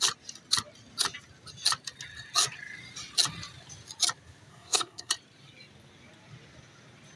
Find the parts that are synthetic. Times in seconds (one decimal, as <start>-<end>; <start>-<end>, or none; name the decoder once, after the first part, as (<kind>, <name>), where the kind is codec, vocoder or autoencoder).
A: 4.5-5.1 (codec, SNAC)